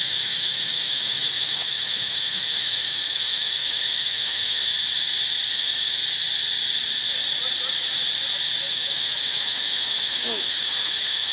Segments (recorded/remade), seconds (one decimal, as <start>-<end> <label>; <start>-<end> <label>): 0.0-4.7 remade; 4.7-5.5 recorded; 5.5-6.0 remade; 6.0-8.7 recorded; 8.7-11.3 remade